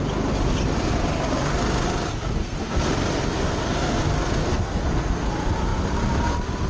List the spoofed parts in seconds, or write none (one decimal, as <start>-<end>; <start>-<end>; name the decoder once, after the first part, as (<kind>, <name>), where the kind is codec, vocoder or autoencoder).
2.4-2.9 (codec, SNAC); 3.4-4.0; 4.4-5.3